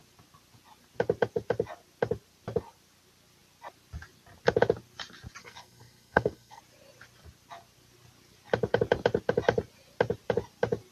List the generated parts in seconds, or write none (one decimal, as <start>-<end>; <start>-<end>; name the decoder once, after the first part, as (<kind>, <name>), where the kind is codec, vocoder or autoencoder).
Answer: 5.4-6.6 (codec, SNAC)